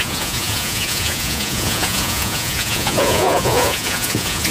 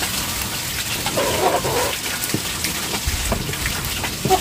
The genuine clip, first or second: second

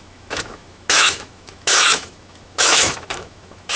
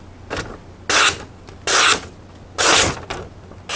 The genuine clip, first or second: second